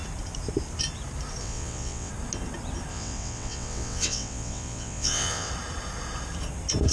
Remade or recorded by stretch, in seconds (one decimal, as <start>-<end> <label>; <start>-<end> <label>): 0.0-1.4 recorded; 1.4-2.1 remade; 2.1-2.9 recorded; 2.9-5.5 remade; 5.5-6.9 recorded